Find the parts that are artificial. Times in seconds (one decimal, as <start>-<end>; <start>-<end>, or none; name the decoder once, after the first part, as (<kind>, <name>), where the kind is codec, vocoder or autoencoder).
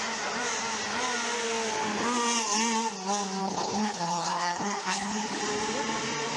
3.4-5.4 (codec, HILCodec)